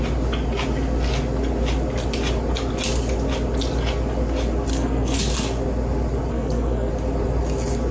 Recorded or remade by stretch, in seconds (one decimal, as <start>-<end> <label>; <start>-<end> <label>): 0.0-4.7 recorded; 4.7-5.2 remade; 5.2-6.3 recorded; 6.3-6.9 remade; 6.9-7.9 recorded